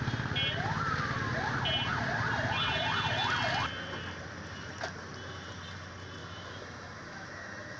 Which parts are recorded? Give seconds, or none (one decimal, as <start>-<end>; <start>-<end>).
0.0-6.2